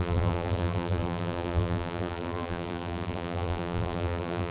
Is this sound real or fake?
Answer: fake